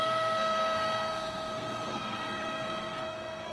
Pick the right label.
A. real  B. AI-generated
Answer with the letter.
B